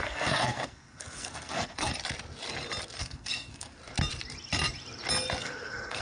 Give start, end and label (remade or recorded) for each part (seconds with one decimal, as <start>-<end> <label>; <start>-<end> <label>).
0.0-1.9 remade; 1.9-3.0 recorded; 3.0-3.8 remade; 3.8-5.4 recorded; 5.4-6.0 remade